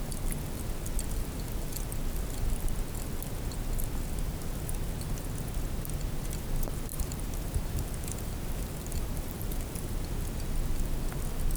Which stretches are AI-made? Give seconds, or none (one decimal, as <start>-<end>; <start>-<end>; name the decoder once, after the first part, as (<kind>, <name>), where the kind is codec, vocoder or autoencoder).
6.9-10.1 (vocoder, BigVGAN v2)